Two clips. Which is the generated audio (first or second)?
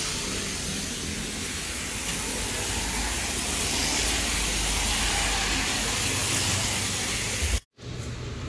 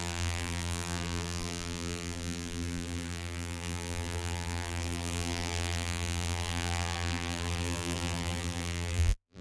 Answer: second